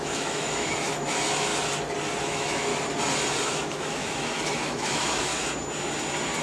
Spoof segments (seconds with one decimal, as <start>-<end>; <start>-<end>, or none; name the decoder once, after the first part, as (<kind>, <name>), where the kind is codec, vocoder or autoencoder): 0.0-1.5 (autoencoder, DAC-VAE); 2.2-2.7; 3.4-5.3